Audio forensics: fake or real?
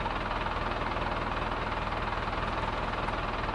real